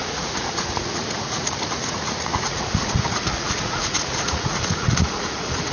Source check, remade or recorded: remade